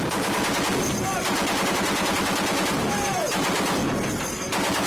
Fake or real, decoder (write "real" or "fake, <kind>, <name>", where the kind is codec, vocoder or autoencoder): real